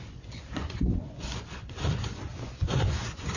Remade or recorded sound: remade